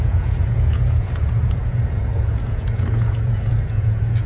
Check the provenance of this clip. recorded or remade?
remade